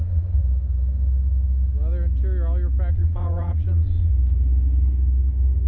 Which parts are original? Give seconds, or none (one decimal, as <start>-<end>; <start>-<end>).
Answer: 0.4-2.9; 4.1-5.7